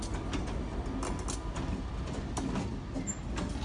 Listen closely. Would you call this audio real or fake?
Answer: real